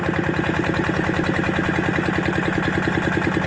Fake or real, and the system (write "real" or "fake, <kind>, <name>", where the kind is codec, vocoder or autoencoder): real